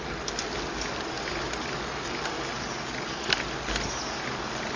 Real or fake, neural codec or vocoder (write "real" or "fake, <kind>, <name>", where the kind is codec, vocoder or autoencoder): real